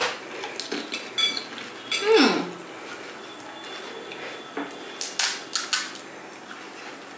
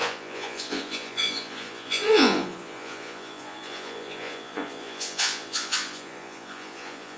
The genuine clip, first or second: first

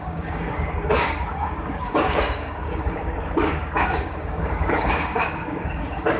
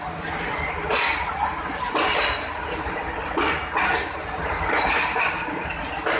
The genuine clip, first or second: second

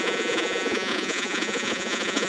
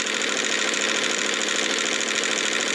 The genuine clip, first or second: second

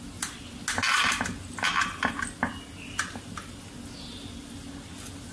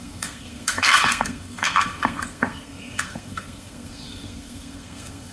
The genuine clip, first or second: first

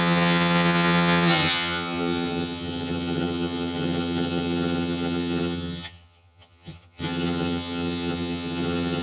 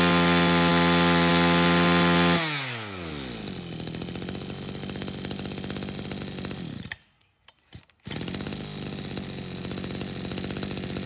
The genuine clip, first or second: second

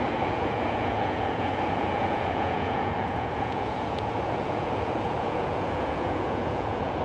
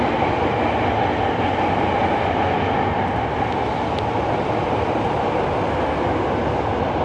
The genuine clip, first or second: second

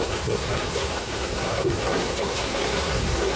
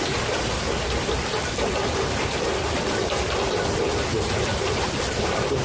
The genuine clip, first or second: second